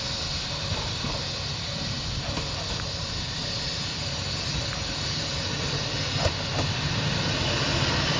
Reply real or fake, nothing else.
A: real